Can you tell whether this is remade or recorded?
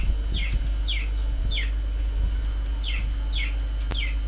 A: recorded